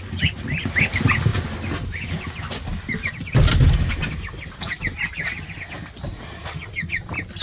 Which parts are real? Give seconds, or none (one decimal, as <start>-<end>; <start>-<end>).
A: 0.0-7.4